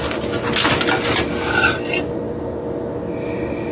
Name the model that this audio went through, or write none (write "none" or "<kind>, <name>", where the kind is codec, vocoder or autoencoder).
none